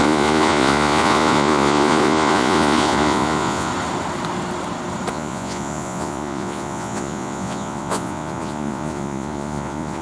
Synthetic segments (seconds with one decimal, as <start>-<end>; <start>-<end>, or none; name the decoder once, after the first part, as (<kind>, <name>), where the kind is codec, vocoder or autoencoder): 0.0-3.7 (vocoder, Vocos); 5.1-10.0